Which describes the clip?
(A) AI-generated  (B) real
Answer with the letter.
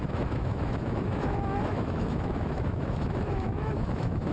A